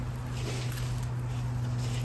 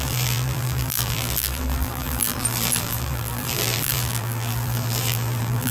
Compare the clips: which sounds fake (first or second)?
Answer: second